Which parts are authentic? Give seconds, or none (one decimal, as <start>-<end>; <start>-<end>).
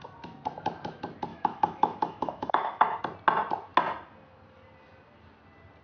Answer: 0.0-1.3; 3.0-5.8